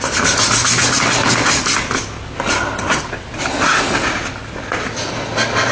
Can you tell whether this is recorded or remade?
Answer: recorded